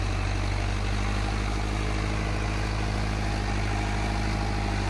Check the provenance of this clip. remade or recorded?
recorded